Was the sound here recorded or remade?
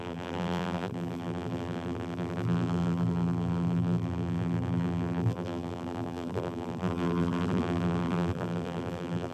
remade